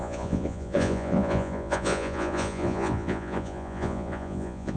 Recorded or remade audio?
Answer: remade